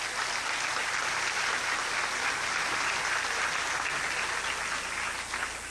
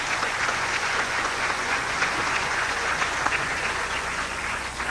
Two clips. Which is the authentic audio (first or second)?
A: first